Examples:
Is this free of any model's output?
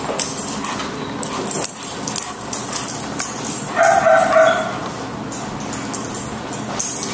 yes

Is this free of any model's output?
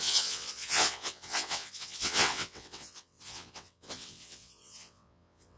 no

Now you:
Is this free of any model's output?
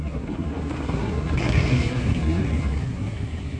no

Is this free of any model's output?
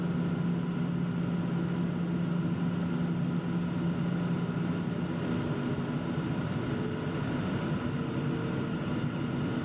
yes